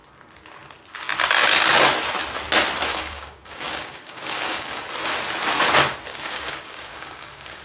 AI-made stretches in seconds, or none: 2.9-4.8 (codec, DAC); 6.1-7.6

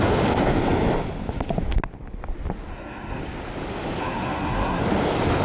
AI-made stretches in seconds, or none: 2.7-3.2 (codec, SNAC); 4.0-4.8

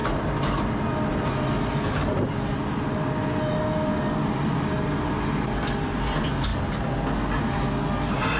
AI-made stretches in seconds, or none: none

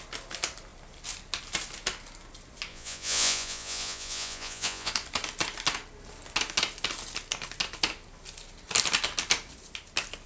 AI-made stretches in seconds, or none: 2.7-4.9 (vocoder, Vocos)

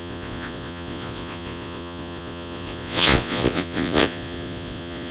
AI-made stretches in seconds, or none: 0.0-5.1 (vocoder, Vocos)

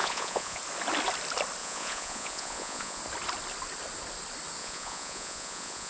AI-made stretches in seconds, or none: 0.0-0.6 (vocoder, Vocos); 1.6-3.0; 4.6-5.9

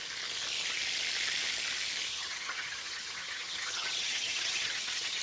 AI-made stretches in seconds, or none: 2.1-5.2 (vocoder, HiFi-GAN)

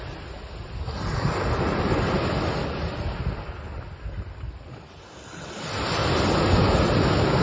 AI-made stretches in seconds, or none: 2.6-5.4 (vocoder, BigVGAN v2)